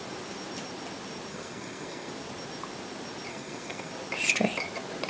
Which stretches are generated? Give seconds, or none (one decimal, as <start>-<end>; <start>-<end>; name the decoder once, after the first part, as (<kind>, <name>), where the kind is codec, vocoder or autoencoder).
1.3-2.1 (codec, SNAC); 3.3-3.9